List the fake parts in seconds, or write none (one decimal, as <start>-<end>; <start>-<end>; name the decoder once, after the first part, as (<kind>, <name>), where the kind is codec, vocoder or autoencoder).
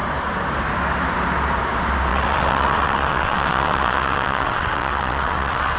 2.1-5.8 (vocoder, WaveNeXt)